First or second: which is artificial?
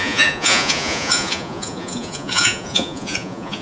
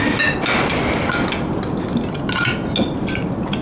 first